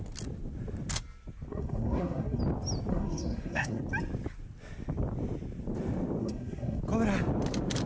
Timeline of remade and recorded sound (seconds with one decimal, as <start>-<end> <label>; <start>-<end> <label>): 0.0-1.5 recorded; 1.5-2.4 remade; 2.4-2.9 recorded; 2.9-3.8 remade; 3.8-6.2 recorded; 6.2-6.8 remade; 6.8-7.9 recorded